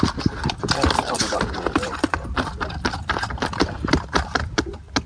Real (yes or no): yes